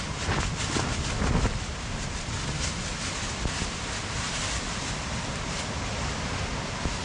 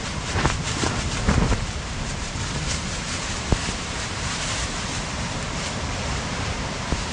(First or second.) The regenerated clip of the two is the second